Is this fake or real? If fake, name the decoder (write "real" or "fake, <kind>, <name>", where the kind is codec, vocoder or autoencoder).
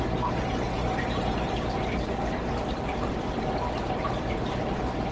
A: real